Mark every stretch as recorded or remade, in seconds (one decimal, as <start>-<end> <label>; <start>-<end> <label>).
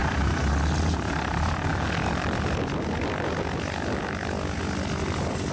0.0-5.5 recorded